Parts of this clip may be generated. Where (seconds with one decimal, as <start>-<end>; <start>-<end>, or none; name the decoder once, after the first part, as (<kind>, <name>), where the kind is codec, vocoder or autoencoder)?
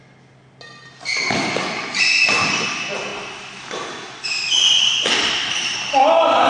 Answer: none